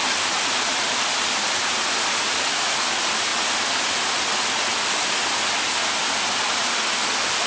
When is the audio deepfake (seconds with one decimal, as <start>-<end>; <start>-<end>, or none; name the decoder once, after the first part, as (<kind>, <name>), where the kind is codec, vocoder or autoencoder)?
none